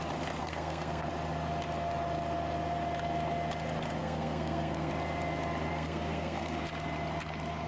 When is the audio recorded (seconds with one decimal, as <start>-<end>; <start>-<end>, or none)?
0.0-0.4; 1.1-4.0; 4.9-5.7; 6.6-7.7